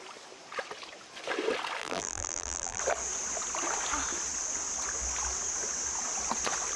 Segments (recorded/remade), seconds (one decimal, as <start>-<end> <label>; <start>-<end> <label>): 0.0-1.8 recorded; 1.8-2.8 remade; 2.8-6.8 recorded